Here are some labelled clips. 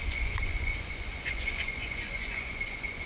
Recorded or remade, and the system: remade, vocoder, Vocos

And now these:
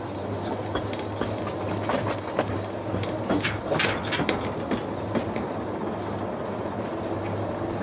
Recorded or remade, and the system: recorded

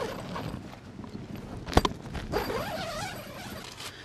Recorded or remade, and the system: recorded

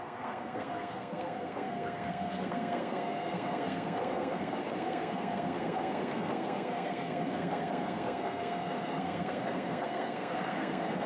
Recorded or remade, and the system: remade, codec, SNAC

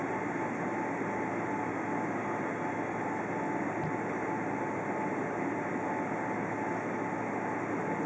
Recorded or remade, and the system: recorded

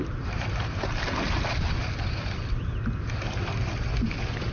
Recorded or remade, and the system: recorded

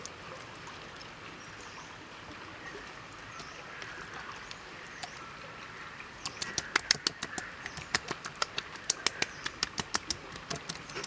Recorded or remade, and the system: recorded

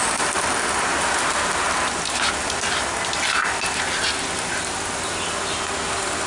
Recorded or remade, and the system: recorded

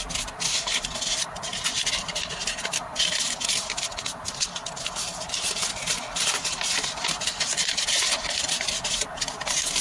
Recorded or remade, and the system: recorded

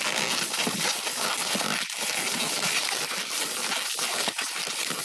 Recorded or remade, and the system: recorded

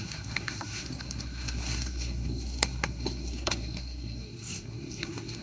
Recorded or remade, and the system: remade, codec, SNAC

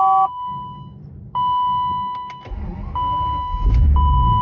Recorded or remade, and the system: recorded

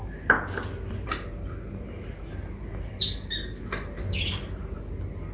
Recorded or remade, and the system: recorded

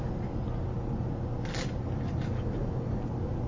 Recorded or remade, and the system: recorded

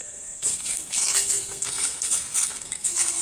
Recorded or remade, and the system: remade, codec, SNAC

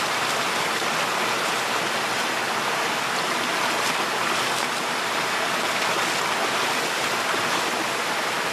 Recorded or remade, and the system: recorded